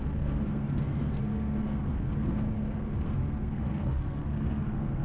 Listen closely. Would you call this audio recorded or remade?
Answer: remade